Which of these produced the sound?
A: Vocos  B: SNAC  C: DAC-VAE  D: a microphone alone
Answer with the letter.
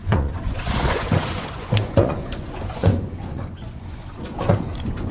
A